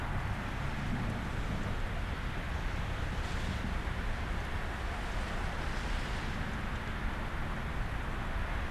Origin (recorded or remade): recorded